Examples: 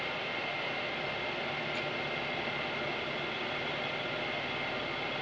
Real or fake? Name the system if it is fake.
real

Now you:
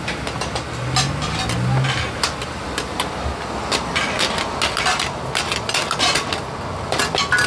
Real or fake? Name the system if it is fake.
real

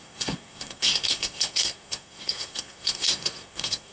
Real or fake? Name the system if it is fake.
fake, codec, SNAC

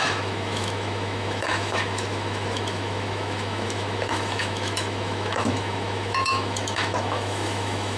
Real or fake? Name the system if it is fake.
fake, autoencoder, DAC-VAE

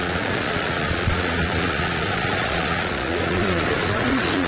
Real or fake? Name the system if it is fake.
fake, vocoder, Vocos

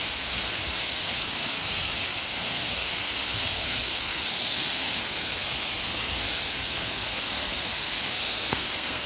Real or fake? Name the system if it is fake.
fake, codec, SNAC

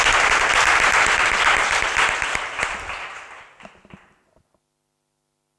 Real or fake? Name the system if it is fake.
real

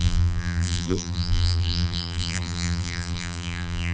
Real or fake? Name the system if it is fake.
fake, vocoder, BigVGAN v2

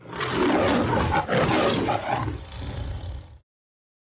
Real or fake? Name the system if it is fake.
real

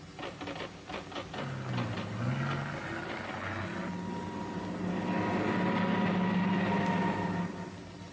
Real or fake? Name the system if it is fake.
real